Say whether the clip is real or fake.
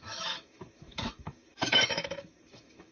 fake